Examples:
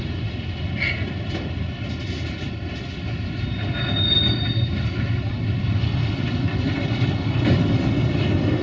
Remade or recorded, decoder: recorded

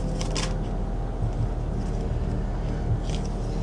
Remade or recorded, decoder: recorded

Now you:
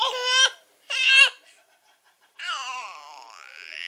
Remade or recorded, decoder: remade, vocoder, BigVGAN v2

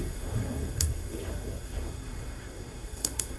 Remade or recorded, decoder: remade, codec, SNAC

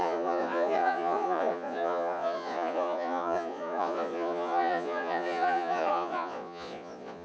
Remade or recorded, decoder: remade, vocoder, Vocos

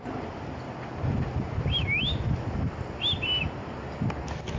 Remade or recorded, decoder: recorded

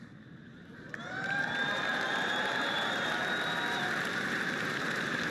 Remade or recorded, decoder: remade, vocoder, BigVGAN v2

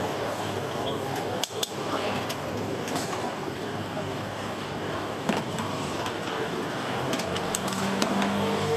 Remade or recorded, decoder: remade, codec, DAC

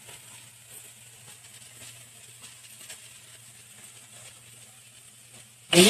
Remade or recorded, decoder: recorded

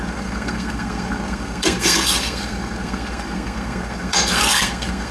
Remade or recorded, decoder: remade, codec, SNAC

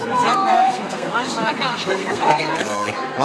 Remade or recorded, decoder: remade, codec, SNAC